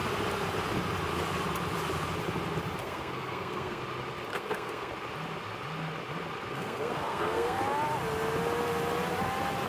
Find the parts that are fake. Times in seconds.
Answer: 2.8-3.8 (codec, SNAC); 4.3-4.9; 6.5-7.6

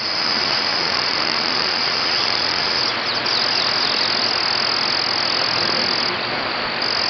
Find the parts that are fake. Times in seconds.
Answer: 0.0-2.8 (vocoder, Vocos)

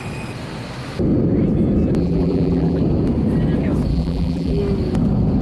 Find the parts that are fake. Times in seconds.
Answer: 2.0-2.8 (vocoder, BigVGAN v2); 3.9-4.6

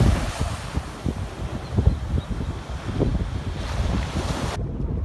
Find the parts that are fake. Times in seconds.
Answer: none

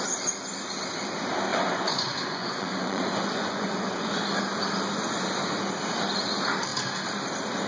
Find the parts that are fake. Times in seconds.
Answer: 1.5-4.2 (vocoder, Vocos)

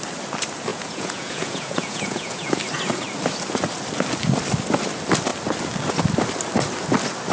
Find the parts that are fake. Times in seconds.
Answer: 0.7-2.6 (vocoder, Vocos)

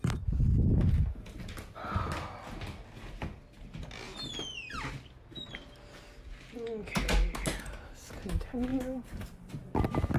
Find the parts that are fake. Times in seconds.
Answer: 8.7-9.5 (vocoder, BigVGAN v2)

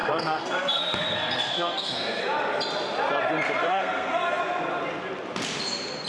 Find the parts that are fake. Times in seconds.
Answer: 0.0-2.2 (codec, SNAC); 3.6-4.4